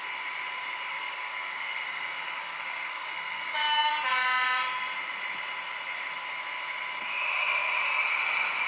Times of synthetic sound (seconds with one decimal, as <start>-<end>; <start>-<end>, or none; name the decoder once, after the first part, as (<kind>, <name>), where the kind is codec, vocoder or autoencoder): 0.9-3.9 (codec, DAC)